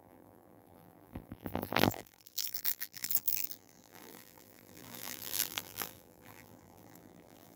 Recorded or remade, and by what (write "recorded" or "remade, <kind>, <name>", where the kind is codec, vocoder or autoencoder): remade, vocoder, BigVGAN v2